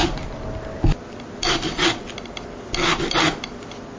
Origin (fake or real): real